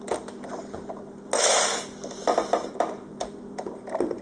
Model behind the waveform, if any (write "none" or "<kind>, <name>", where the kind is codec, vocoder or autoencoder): none